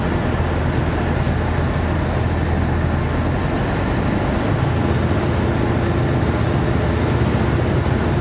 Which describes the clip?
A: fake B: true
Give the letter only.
B